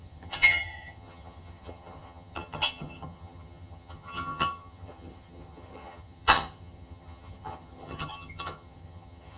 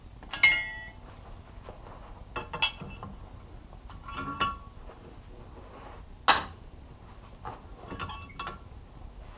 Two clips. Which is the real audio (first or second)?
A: second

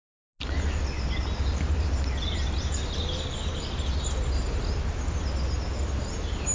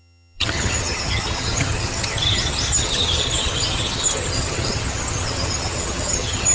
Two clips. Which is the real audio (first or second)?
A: first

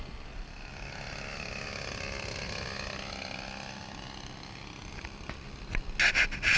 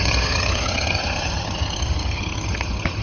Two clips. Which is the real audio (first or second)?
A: first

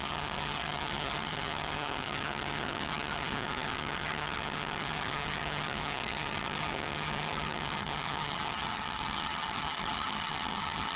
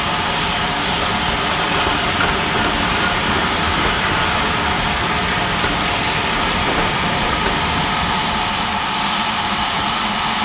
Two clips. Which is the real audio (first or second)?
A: second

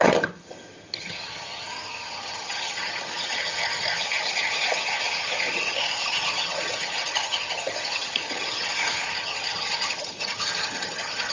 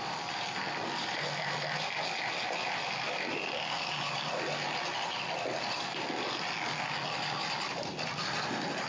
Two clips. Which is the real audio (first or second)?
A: second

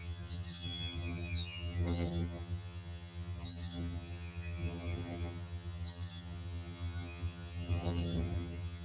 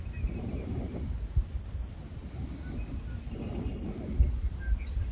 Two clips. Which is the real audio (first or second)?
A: second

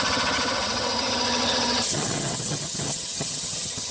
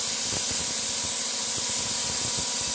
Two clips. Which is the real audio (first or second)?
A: second